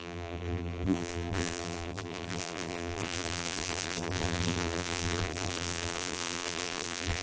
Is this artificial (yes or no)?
yes